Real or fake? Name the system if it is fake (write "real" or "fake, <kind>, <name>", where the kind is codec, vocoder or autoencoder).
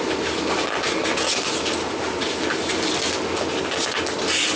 real